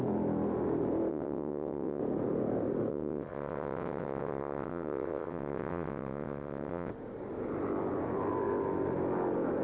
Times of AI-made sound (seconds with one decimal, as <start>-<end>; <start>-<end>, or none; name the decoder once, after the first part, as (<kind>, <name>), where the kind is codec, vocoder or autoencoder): 1.1-2.0 (vocoder, WaveNeXt); 2.9-6.9